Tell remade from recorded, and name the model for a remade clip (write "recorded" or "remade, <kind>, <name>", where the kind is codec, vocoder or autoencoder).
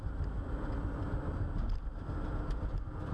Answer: recorded